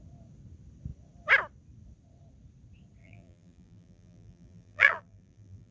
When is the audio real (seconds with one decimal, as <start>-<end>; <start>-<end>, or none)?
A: 0.0-3.0